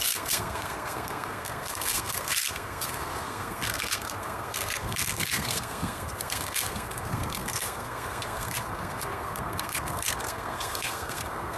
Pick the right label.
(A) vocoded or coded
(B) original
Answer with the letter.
A